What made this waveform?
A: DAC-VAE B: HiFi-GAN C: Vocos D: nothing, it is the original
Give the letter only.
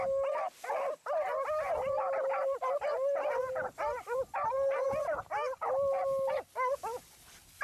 D